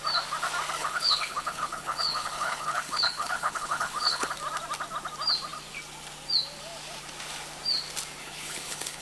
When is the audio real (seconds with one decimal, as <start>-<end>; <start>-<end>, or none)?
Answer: 0.0-0.8; 4.3-8.2